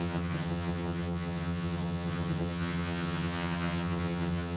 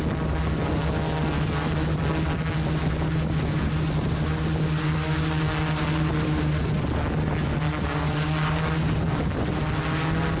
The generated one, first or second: first